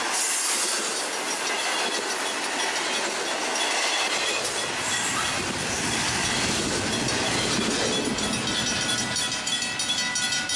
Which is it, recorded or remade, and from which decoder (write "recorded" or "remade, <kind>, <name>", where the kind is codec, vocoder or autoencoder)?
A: recorded